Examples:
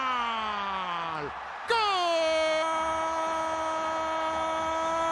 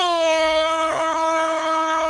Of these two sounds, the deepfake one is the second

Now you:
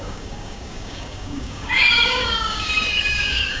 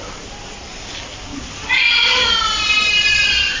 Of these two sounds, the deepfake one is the first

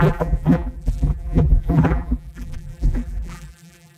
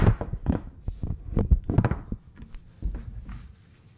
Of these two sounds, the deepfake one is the first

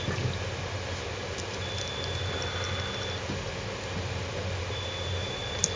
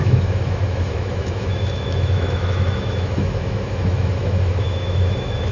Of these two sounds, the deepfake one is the second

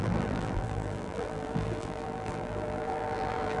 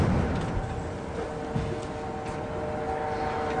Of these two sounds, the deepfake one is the first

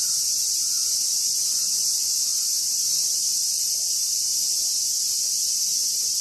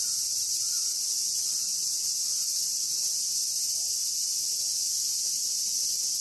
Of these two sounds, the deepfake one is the first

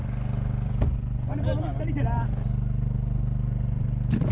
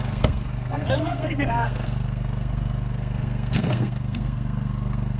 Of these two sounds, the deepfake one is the second